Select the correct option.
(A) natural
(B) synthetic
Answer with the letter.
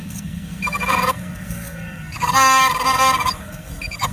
B